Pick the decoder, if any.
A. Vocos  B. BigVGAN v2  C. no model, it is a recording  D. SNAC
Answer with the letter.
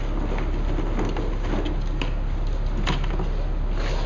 C